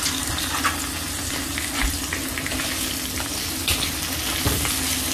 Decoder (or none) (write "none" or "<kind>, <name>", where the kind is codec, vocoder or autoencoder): none